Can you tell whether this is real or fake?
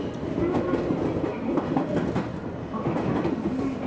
real